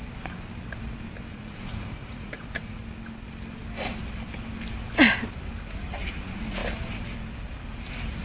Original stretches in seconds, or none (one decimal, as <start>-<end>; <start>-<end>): 0.0-1.3; 2.8-8.2